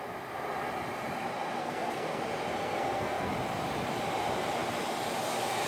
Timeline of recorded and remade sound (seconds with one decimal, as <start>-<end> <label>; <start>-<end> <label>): 0.0-1.6 recorded; 1.6-2.2 remade; 2.2-2.6 recorded; 2.6-3.3 remade; 3.3-5.7 recorded